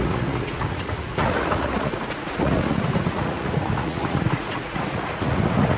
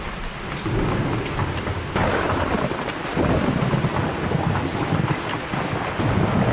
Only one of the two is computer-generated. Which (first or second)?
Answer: first